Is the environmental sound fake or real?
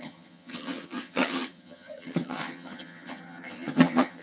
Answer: fake